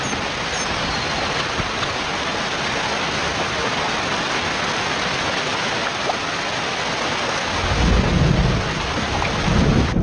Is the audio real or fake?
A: real